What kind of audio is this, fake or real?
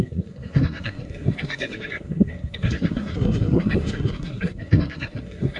fake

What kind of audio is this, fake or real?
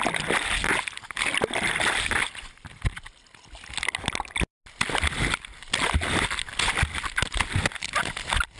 real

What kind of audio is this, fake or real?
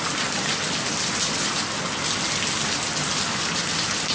real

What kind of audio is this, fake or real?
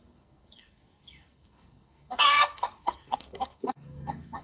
fake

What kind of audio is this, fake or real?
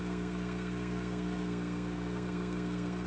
fake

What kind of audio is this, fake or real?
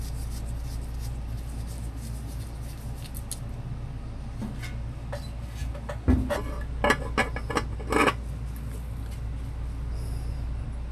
real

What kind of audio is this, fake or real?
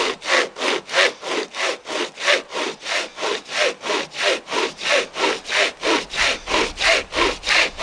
real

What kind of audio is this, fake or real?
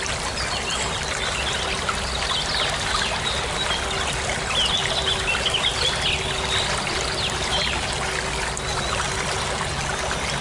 real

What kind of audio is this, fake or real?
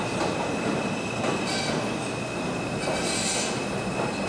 real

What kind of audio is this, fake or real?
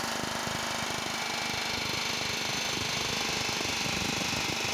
real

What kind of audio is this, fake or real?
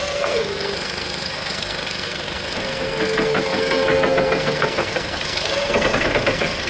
fake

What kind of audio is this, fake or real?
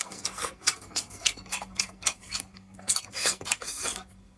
fake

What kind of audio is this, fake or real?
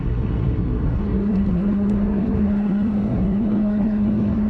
fake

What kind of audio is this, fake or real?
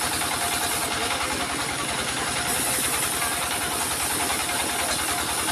real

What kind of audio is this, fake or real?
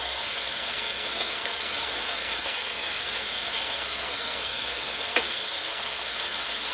fake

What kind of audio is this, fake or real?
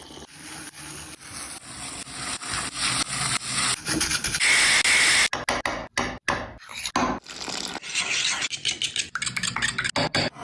real